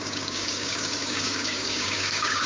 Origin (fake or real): fake